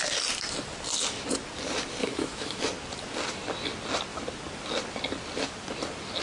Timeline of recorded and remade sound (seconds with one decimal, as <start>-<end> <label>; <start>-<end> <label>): 0.0-2.0 recorded; 2.0-2.6 remade; 2.6-6.2 recorded